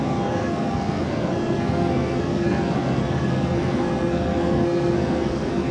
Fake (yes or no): yes